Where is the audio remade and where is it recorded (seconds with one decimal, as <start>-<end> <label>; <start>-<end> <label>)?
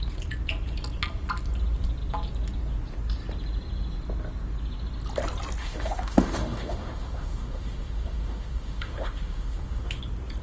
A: 0.0-5.6 recorded; 5.6-10.0 remade; 10.0-10.4 recorded